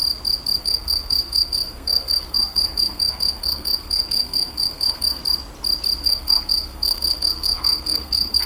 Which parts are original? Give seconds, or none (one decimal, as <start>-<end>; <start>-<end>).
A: 0.0-0.6; 5.2-6.0